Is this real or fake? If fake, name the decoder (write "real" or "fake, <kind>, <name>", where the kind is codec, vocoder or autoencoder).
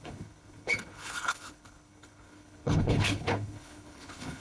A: fake, codec, HILCodec